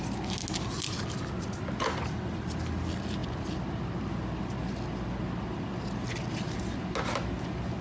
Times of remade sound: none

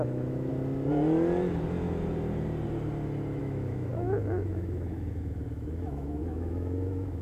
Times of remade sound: 0.0-0.5 (autoencoder, DAC-VAE); 3.4-7.2